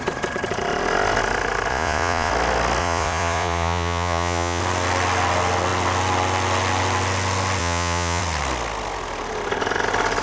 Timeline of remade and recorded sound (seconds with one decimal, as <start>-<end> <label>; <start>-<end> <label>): 0.0-1.7 recorded; 1.7-2.3 remade; 2.3-2.8 recorded; 2.8-4.6 remade; 4.6-7.6 recorded; 7.6-8.2 remade; 8.2-10.2 recorded